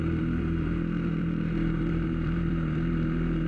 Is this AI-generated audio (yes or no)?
yes